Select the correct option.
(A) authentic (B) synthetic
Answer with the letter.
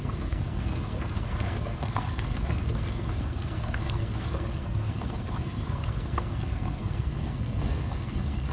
B